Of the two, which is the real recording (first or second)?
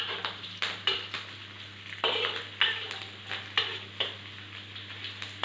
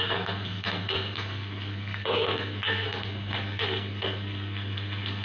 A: first